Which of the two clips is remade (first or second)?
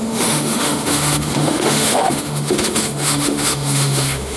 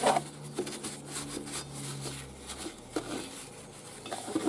first